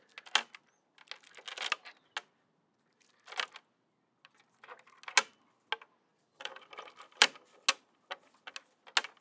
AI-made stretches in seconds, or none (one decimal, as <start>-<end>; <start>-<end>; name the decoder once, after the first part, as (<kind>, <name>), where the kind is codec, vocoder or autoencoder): 6.1-6.6 (vocoder, BigVGAN v2)